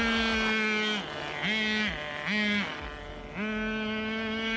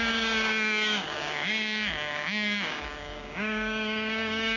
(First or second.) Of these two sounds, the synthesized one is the second